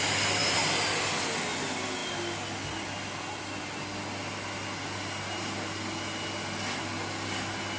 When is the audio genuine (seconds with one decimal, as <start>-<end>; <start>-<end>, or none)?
0.0-0.4; 1.0-7.8

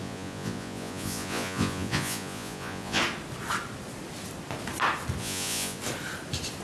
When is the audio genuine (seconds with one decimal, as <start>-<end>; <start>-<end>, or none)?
3.0-5.2; 5.8-6.6

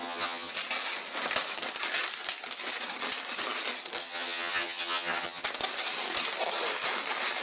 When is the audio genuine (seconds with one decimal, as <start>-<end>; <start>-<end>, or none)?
0.5-4.0; 5.4-7.4